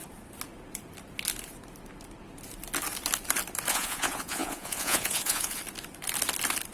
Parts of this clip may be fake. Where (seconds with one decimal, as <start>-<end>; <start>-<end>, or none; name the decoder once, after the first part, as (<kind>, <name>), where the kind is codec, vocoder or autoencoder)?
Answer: 3.7-5.6 (vocoder, Vocos)